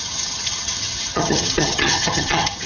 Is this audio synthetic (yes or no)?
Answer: yes